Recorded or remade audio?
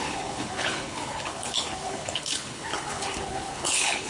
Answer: remade